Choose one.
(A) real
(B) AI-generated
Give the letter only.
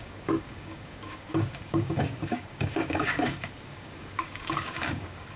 B